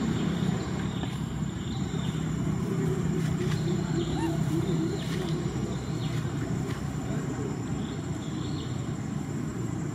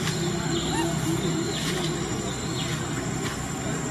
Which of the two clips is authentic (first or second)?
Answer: second